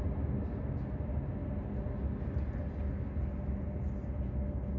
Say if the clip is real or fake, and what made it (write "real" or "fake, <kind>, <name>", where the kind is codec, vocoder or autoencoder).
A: real